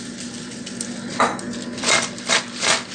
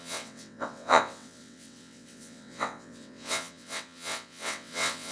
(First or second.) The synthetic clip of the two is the second